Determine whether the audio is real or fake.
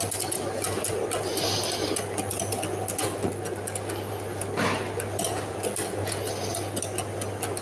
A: real